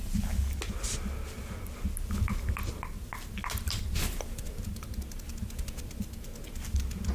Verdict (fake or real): real